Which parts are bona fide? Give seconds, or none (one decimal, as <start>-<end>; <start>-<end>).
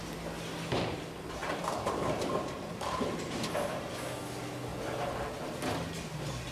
0.0-1.4; 3.9-6.5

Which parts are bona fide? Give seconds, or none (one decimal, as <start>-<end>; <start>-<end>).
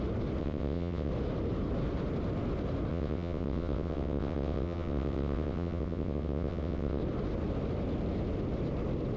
0.0-0.4; 1.1-2.9; 7.0-9.2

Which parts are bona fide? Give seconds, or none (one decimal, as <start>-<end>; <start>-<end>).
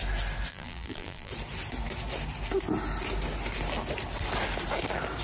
0.0-0.5; 1.3-5.2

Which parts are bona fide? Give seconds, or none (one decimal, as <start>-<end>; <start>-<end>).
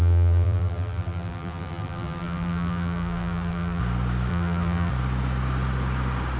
3.8-4.3; 4.9-6.4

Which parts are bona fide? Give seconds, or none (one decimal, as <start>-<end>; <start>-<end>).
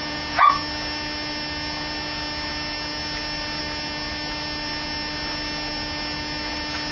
0.5-6.9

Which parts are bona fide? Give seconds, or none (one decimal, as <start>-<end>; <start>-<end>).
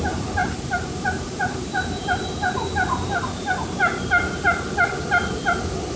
0.0-0.4; 4.0-6.0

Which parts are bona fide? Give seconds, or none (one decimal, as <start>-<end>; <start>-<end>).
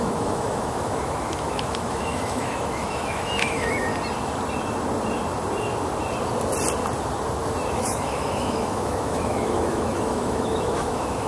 3.9-7.7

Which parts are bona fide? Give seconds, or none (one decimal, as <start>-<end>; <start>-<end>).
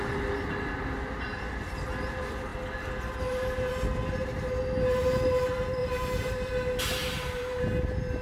0.0-5.8; 6.5-7.0; 7.6-8.2